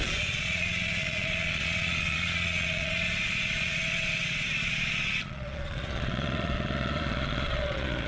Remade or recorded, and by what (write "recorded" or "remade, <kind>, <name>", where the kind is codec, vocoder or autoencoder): remade, vocoder, Vocos